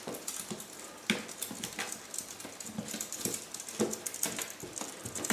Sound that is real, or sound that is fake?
real